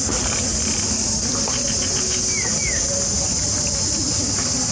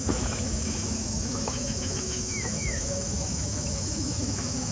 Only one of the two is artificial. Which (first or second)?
second